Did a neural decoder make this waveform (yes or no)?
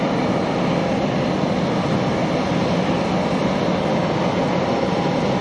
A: no